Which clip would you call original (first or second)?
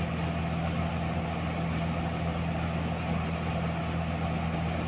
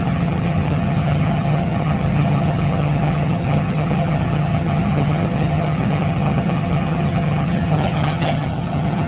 first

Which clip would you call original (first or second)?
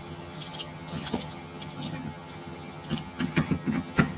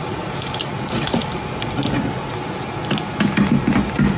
second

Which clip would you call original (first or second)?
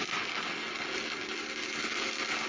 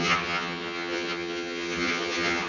first